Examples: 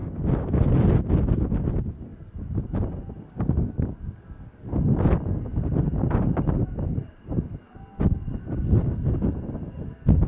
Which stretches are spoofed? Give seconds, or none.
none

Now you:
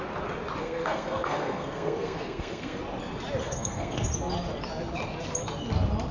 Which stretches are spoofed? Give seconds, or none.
0.6-2.8 (codec, SNAC); 3.4-4.1

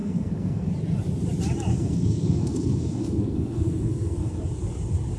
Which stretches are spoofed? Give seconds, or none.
0.0-0.7 (codec, SNAC); 1.7-4.4

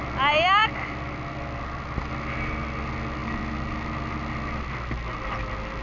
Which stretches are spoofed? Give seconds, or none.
none